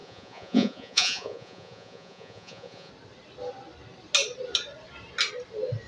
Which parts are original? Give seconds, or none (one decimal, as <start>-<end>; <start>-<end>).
2.9-5.9